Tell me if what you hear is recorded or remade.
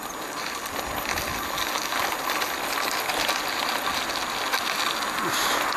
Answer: recorded